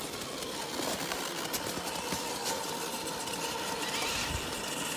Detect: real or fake real